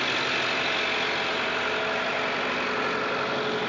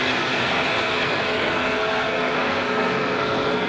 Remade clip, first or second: second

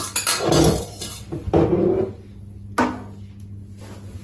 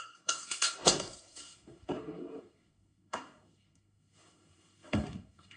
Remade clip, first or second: second